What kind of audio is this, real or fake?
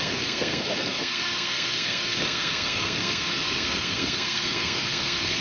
fake